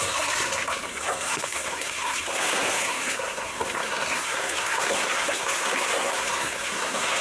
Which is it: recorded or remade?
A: remade